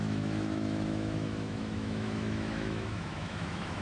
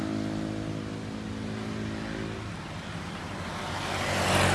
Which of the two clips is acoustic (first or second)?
second